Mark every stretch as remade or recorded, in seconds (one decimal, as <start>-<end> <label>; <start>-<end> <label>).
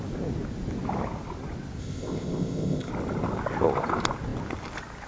0.0-1.8 recorded; 1.8-2.9 remade; 2.9-5.1 recorded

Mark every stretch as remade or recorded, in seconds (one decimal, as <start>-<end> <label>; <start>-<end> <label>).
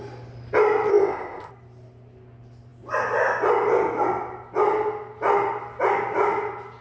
0.0-0.9 recorded; 0.9-1.5 remade; 1.5-6.8 recorded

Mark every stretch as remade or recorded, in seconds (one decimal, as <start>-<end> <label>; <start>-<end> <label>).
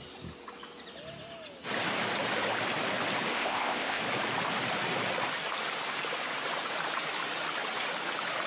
0.0-3.3 recorded; 3.3-4.0 remade; 4.0-8.5 recorded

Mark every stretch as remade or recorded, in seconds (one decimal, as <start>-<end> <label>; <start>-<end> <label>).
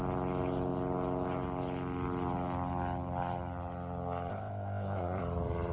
0.0-4.3 recorded; 4.3-5.2 remade; 5.2-5.7 recorded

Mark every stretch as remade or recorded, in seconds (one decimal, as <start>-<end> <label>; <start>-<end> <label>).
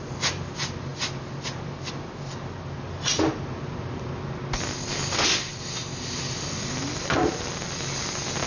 0.0-8.5 recorded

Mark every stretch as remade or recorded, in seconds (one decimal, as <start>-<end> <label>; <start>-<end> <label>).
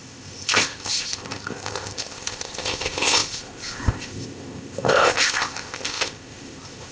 0.0-6.9 remade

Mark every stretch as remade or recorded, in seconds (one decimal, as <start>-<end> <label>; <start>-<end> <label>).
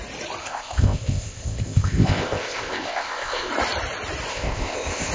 0.0-0.4 recorded; 0.4-3.5 remade; 3.5-4.3 recorded; 4.3-5.1 remade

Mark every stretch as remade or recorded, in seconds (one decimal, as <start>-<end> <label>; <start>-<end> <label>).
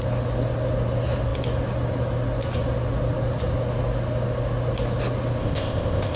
0.0-5.4 recorded; 5.4-6.2 remade